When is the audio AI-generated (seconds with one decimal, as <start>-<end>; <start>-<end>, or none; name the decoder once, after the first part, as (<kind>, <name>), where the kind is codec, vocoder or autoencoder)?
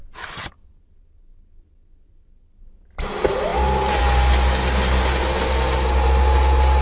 none